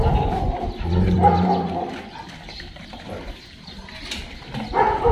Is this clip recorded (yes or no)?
yes